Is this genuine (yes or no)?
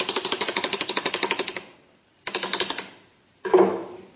yes